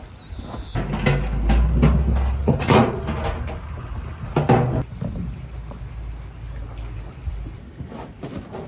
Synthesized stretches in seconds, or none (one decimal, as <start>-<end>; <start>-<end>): 2.4-3.0